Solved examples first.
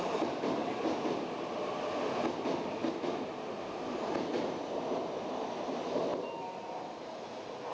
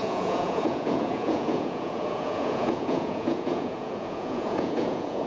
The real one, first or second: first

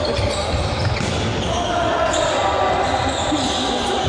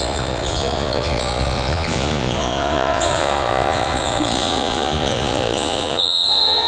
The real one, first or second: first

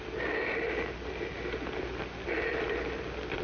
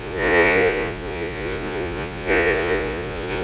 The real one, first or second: first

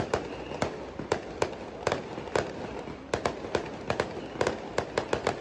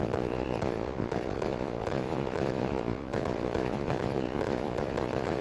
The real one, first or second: first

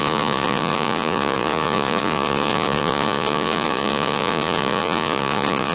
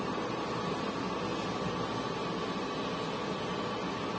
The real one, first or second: second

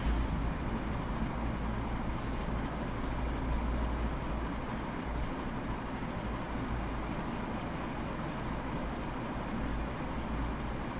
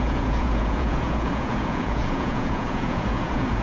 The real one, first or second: first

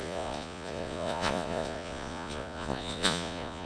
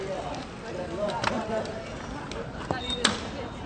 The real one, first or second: second